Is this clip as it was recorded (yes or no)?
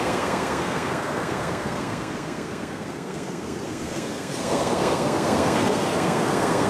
no